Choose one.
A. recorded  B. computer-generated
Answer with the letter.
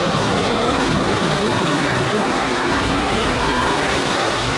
B